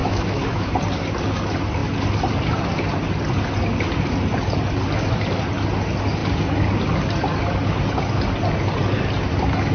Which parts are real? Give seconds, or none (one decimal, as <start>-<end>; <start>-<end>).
0.7-9.7